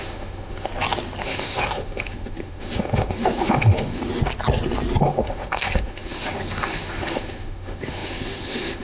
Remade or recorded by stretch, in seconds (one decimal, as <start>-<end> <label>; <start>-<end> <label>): 0.0-0.7 remade; 0.7-1.2 recorded; 1.2-4.0 remade; 4.0-5.0 recorded; 5.0-8.8 remade